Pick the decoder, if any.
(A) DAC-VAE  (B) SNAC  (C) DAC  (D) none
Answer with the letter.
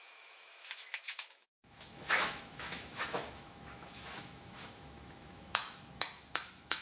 A